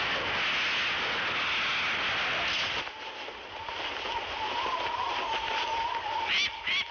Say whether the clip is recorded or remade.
recorded